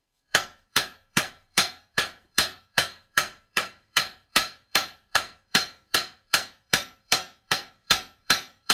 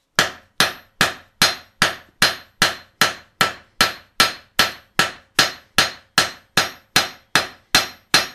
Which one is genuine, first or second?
second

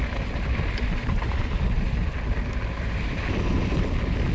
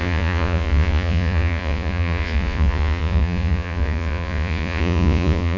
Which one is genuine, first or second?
first